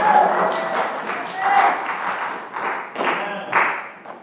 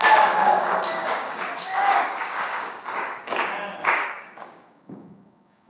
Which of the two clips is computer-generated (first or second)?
second